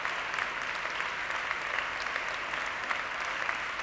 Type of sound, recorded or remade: recorded